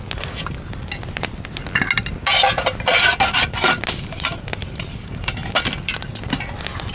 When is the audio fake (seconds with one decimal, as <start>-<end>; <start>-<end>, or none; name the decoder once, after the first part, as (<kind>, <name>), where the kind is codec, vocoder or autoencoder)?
none